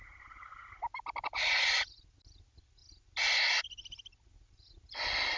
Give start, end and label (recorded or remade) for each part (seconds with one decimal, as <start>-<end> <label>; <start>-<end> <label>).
0.0-5.4 recorded